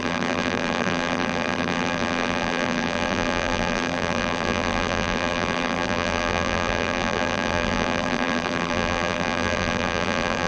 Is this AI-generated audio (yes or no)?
yes